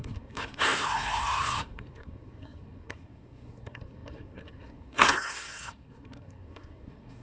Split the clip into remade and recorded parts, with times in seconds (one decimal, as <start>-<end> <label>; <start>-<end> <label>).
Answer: 0.0-7.2 remade